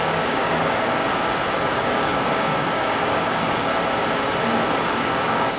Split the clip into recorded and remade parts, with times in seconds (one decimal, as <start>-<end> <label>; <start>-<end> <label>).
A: 0.0-1.0 remade; 1.0-1.7 recorded; 1.7-3.7 remade; 3.7-5.0 recorded; 5.0-5.6 remade